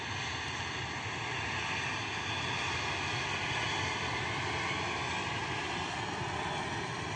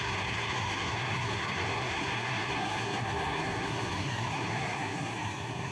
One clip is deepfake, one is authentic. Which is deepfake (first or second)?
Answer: second